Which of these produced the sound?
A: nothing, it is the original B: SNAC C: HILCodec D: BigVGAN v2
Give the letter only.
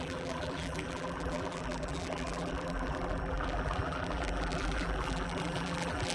D